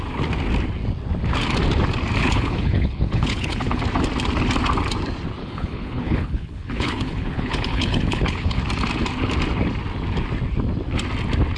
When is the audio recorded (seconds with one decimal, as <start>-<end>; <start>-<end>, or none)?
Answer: 0.0-2.2; 3.8-5.4; 8.6-11.6